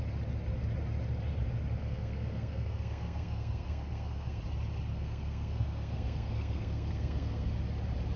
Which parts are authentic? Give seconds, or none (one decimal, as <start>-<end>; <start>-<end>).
0.0-1.8; 4.4-4.9; 7.5-8.2